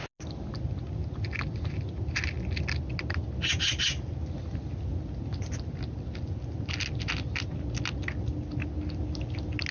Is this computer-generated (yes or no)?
no